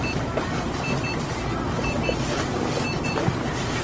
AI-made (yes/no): no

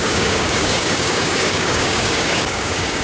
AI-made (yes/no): yes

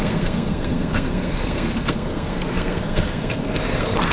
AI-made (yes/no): yes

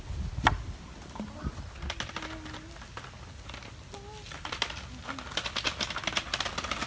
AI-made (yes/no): no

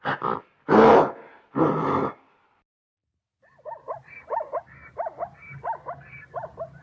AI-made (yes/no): no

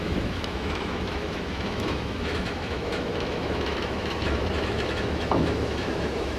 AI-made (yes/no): yes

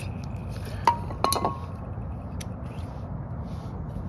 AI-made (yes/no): no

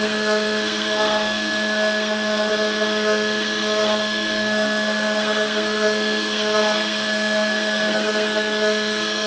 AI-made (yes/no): yes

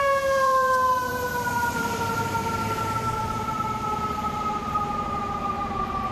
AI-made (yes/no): yes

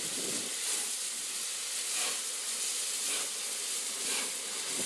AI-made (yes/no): no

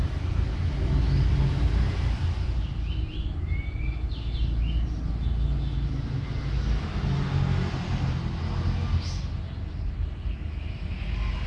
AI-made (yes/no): no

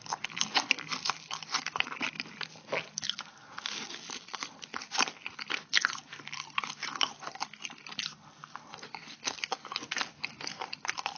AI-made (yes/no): no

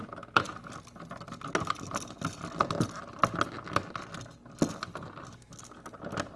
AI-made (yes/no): no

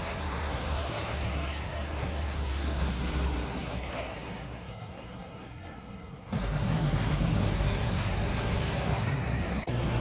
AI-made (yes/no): yes